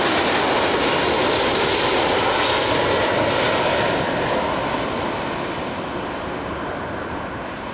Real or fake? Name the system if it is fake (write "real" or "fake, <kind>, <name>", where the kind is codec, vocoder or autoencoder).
real